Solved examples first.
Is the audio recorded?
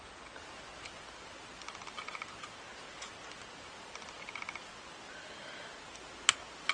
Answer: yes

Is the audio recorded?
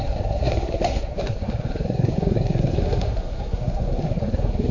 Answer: no